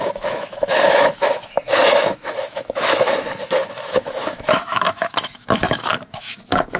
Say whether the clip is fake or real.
fake